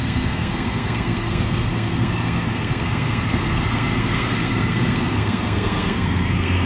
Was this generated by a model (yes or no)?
yes